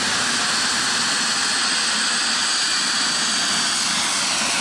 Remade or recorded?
recorded